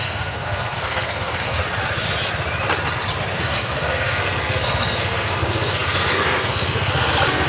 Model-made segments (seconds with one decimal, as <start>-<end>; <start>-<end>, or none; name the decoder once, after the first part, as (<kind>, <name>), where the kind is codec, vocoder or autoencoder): 0.0-1.6 (codec, SNAC); 3.4-7.5